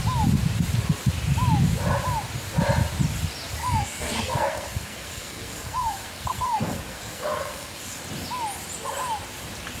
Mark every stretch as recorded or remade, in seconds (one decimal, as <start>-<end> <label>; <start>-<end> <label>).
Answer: 0.0-3.6 recorded; 3.6-8.0 remade; 8.0-9.8 recorded